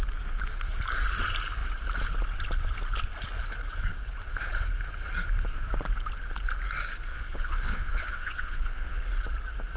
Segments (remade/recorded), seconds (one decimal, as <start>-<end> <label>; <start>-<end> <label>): 0.0-7.1 recorded; 7.1-9.0 remade; 9.0-9.8 recorded